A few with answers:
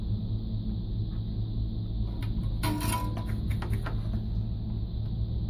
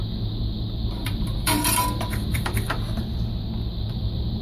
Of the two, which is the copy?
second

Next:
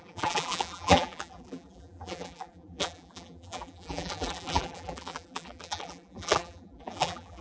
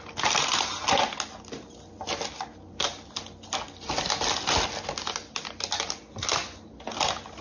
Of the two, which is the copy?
first